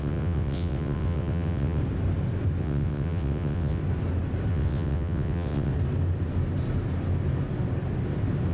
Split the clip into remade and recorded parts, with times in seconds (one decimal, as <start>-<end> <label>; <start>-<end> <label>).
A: 0.0-1.8 remade; 1.8-2.6 recorded; 2.6-3.8 remade; 3.8-4.5 recorded; 4.5-5.7 remade; 5.7-8.5 recorded